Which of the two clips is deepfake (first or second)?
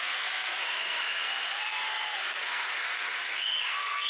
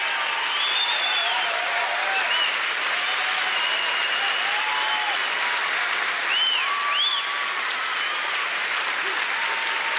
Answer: first